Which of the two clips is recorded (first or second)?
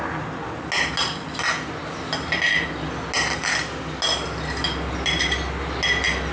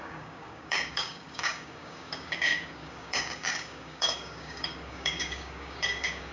first